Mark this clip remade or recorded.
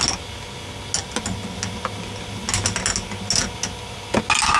recorded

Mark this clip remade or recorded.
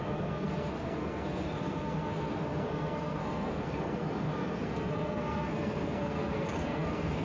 remade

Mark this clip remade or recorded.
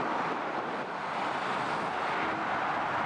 recorded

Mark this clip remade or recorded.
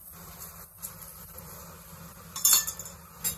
recorded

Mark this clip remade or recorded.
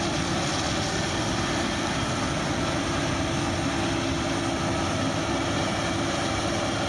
recorded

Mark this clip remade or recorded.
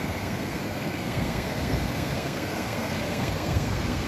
remade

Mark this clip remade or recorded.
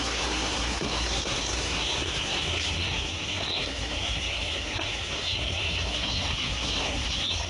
remade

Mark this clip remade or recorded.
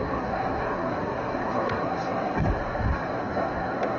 remade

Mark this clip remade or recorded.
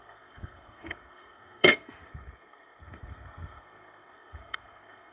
remade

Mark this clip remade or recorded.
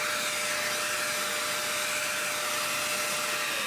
recorded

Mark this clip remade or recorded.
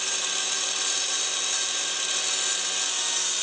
recorded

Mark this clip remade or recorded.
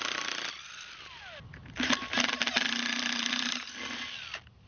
recorded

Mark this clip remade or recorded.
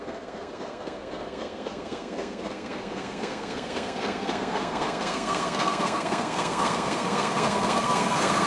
remade